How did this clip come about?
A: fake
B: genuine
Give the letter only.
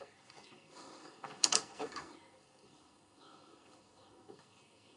A